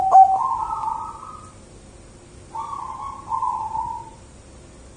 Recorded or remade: recorded